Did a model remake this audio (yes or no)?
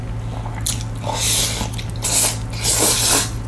no